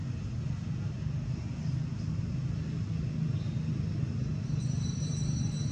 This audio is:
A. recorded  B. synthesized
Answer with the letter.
A